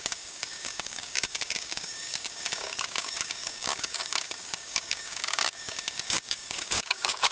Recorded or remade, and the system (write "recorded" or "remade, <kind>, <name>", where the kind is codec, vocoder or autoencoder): remade, codec, DAC